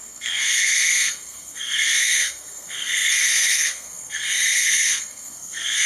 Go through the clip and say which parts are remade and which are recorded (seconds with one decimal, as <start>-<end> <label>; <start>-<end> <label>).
0.0-5.9 remade